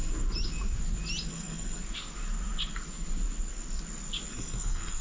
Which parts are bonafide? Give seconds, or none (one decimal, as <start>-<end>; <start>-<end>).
0.0-1.3; 1.8-4.3